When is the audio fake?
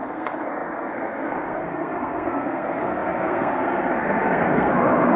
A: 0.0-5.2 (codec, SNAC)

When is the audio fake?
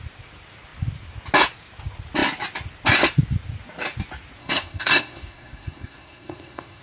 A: 4.4-6.8 (codec, SNAC)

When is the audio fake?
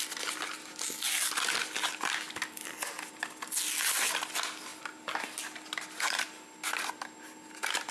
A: none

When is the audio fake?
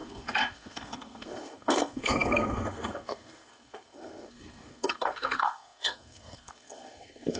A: 0.0-7.4 (codec, SNAC)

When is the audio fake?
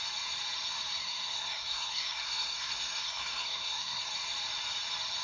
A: 1.0-4.1 (codec, SNAC)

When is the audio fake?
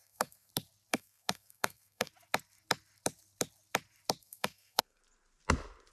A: 0.0-0.5 (codec, SNAC); 0.9-2.1; 4.2-5.0